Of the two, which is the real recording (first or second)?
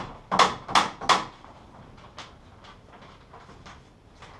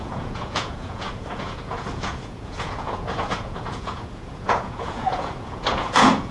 first